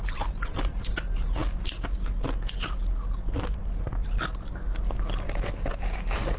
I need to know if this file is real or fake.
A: real